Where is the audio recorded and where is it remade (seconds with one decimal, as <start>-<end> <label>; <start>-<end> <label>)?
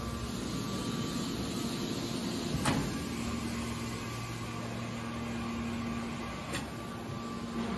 0.0-7.8 recorded